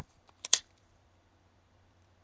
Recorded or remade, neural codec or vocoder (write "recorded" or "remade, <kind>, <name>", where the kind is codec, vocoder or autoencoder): remade, vocoder, BigVGAN v2